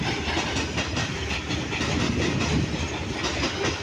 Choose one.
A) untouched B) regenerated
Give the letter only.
A